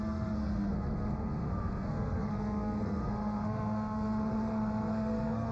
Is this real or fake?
fake